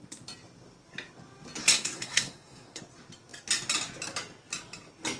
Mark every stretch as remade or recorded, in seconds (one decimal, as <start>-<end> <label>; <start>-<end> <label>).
0.0-1.6 recorded; 1.6-2.8 remade; 2.8-5.2 recorded